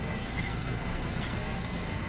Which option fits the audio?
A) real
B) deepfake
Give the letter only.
B